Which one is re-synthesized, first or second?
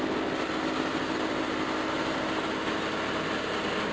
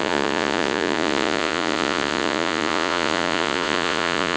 second